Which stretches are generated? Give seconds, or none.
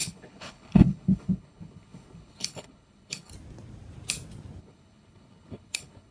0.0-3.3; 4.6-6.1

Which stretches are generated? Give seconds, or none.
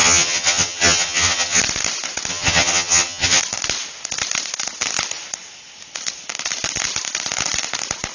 0.0-1.6; 2.3-3.4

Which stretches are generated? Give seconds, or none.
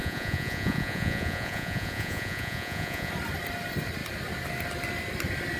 0.0-3.1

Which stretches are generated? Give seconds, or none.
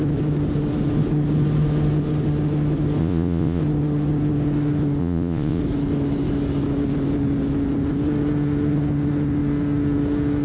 3.0-3.6; 5.0-5.6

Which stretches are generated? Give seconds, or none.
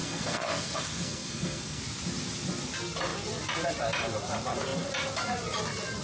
0.0-1.8